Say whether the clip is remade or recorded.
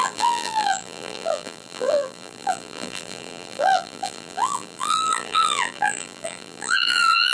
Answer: remade